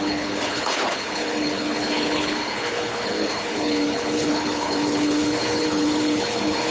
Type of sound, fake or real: fake